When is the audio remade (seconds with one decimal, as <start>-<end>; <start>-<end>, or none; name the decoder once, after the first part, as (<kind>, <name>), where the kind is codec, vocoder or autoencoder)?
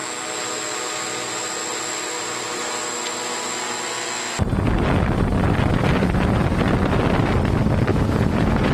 7.9-8.7 (vocoder, Vocos)